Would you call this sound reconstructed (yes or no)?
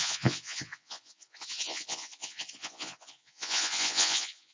yes